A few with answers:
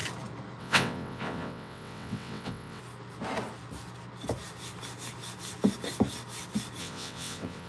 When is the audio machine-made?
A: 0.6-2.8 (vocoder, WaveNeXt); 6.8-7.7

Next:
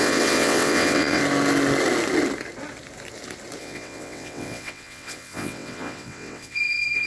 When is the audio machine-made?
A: 0.0-1.2 (vocoder, WaveNeXt); 3.6-7.1

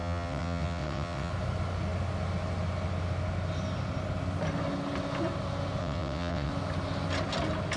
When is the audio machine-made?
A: 0.0-1.3 (vocoder, WaveNeXt); 5.8-6.5

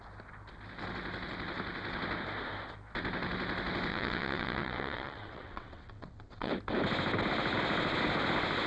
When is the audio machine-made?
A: 3.9-6.5 (vocoder, WaveNeXt)

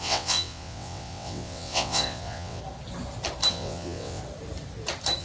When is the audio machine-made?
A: 0.0-2.6 (vocoder, WaveNeXt); 3.5-4.2

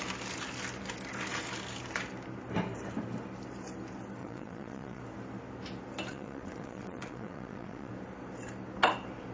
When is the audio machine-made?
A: 4.2-5.0 (vocoder, WaveNeXt); 6.1-7.9

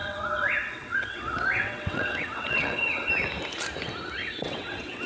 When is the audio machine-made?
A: 0.0-3.1 (vocoder, WaveNeXt); 4.2-5.1